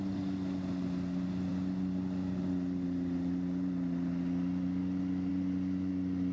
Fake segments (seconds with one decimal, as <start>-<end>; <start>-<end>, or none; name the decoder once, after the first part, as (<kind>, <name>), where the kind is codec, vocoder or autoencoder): none